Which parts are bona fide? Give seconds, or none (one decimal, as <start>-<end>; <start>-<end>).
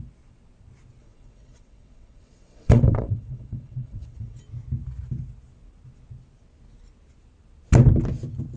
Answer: 0.0-1.0; 4.4-8.6